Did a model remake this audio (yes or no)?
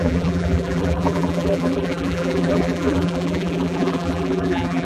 yes